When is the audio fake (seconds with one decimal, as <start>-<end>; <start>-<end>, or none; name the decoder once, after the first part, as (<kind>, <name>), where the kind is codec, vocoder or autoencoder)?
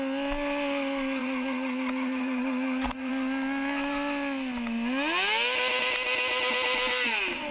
1.2-3.1 (vocoder, Vocos)